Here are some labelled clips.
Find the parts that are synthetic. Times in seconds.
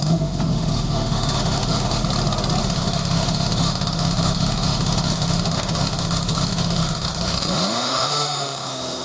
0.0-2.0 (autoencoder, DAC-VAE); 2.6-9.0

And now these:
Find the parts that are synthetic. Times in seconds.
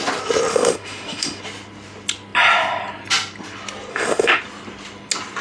0.5-1.4 (autoencoder, DAC-VAE); 3.9-4.4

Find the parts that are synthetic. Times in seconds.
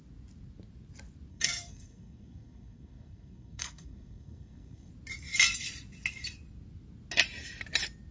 1.3-4.9 (codec, SNAC)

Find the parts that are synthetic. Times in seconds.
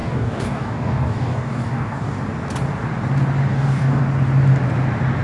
0.0-2.2 (codec, DAC); 3.5-4.0